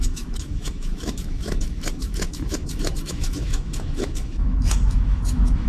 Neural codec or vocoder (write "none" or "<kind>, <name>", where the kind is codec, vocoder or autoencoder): autoencoder, DAC-VAE